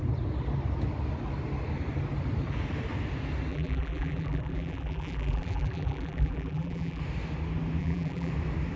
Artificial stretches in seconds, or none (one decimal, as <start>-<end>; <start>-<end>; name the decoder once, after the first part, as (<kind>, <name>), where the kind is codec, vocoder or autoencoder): 3.5-7.0 (vocoder, BigVGAN v2); 7.8-8.3

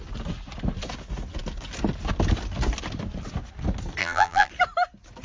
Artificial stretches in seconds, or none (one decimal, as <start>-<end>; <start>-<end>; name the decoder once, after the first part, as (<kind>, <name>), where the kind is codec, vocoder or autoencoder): 4.0-4.5 (vocoder, BigVGAN v2)

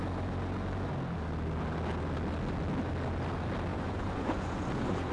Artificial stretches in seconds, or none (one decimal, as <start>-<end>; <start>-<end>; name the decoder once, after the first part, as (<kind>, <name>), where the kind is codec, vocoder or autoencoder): 3.7-5.1 (vocoder, Vocos)

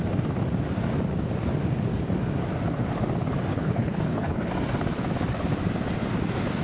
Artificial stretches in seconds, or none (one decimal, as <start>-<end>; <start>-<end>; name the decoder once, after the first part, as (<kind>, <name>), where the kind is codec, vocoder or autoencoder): 3.5-4.5 (codec, HILCodec)

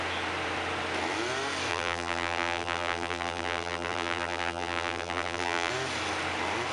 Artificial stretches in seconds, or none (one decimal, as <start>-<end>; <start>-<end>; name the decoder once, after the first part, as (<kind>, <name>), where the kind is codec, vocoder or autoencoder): 1.7-5.7 (vocoder, BigVGAN v2)

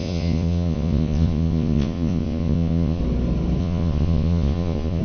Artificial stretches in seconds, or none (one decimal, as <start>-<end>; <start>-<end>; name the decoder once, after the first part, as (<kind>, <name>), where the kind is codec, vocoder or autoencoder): 0.0-3.0 (vocoder, Vocos); 3.6-5.0

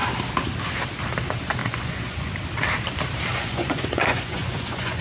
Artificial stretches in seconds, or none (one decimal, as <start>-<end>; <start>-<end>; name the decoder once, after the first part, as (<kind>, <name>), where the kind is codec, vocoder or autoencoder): 1.6-2.3 (vocoder, Vocos); 3.3-5.0